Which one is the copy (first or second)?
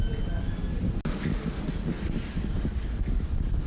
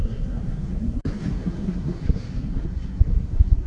second